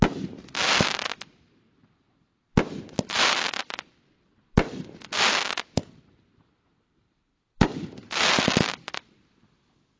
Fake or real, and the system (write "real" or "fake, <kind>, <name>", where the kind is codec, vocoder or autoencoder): real